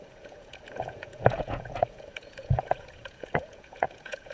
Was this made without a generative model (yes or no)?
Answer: no